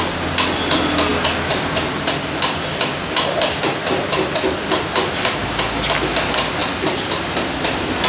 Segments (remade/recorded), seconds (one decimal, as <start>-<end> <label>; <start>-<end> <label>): 0.0-6.6 recorded; 6.6-7.5 remade; 7.5-8.1 recorded